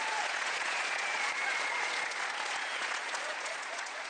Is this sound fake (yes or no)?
yes